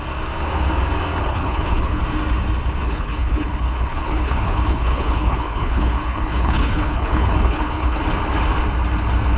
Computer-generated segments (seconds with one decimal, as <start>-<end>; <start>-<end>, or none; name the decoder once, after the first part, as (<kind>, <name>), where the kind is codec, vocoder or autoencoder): 1.2-2.0 (codec, HILCodec); 2.8-8.0